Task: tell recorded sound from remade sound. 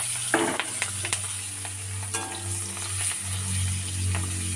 recorded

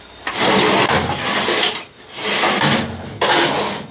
recorded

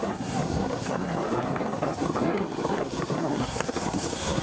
remade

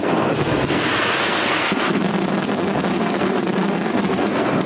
remade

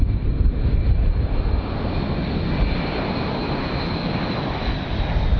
recorded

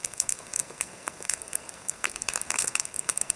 remade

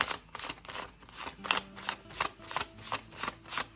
recorded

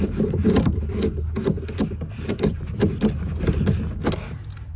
recorded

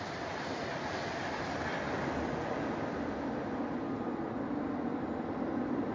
recorded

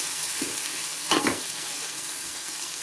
remade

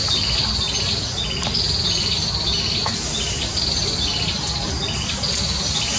recorded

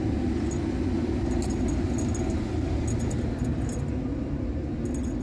recorded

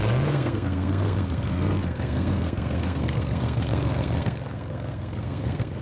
remade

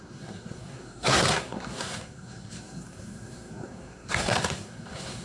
remade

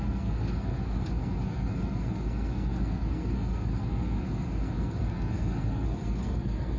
remade